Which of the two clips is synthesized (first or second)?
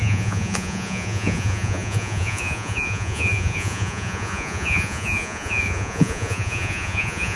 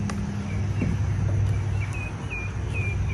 first